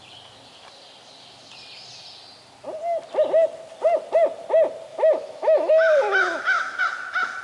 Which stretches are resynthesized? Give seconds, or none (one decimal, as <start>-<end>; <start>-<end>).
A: 4.9-6.8